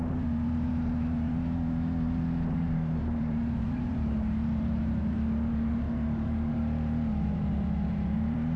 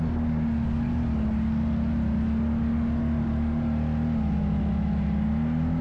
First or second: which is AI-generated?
first